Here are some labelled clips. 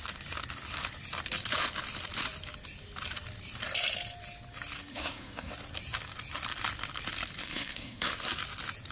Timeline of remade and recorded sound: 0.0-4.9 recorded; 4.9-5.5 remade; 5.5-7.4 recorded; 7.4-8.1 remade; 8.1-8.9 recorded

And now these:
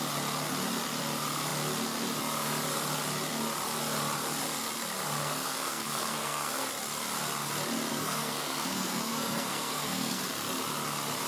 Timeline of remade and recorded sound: 0.0-5.2 recorded; 5.2-6.7 remade; 6.7-7.9 recorded; 7.9-10.2 remade; 10.2-11.3 recorded

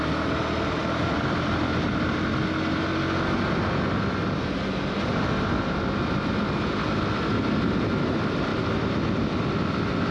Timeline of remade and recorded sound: 0.0-10.1 recorded

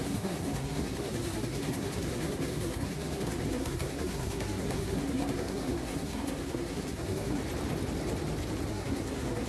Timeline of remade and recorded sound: 0.0-7.4 remade; 7.4-8.7 recorded; 8.7-9.5 remade

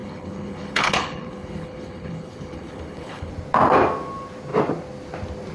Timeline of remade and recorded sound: 0.0-3.3 remade; 3.3-5.5 recorded